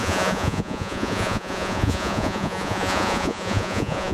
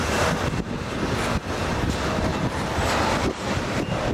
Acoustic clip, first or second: second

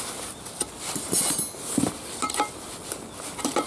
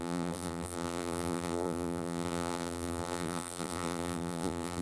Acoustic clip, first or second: first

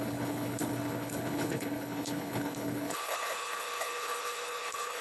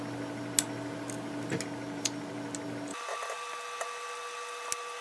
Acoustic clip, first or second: second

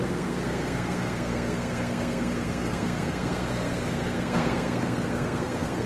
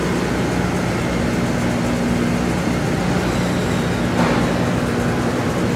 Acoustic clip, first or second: second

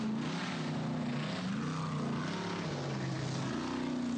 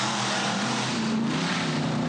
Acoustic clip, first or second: first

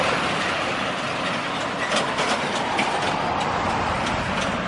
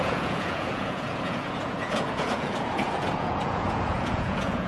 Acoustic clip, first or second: first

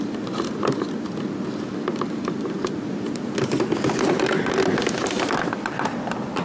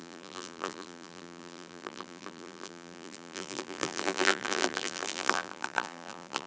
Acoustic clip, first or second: first